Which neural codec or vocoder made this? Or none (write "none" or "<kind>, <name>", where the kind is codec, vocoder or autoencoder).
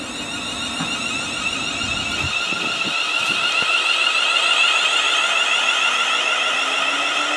none